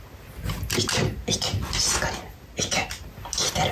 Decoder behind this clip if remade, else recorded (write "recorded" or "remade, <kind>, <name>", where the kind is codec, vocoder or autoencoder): recorded